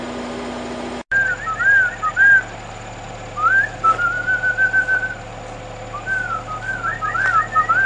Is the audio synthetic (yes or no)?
no